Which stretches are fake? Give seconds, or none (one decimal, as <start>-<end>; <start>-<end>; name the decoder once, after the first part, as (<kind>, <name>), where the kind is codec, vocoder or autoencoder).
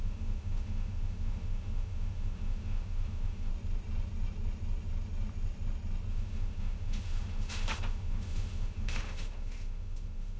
0.0-3.5 (autoencoder, DAC-VAE); 6.1-10.4